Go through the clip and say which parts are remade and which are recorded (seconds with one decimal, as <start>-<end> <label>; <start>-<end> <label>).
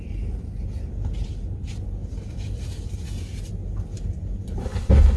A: 0.0-4.6 recorded; 4.6-5.2 remade